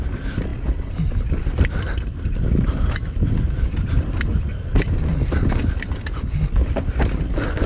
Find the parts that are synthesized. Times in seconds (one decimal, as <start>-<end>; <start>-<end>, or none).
none